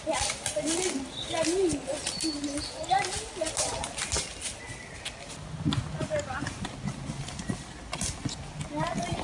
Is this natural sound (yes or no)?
yes